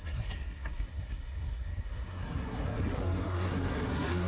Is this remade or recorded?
remade